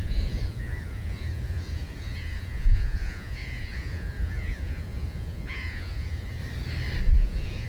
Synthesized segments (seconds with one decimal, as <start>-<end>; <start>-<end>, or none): 0.0-6.4; 7.0-7.7